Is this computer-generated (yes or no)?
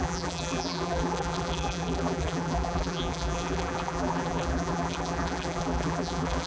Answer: yes